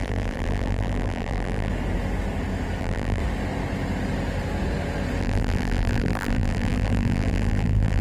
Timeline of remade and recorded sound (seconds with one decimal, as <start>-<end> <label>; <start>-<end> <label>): 0.0-1.7 remade; 1.7-2.8 recorded; 2.8-3.2 remade; 3.2-5.2 recorded; 5.2-8.0 remade